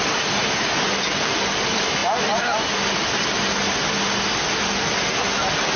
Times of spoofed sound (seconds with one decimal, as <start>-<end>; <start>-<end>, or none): none